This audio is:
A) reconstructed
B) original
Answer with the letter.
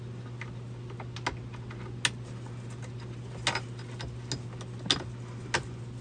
B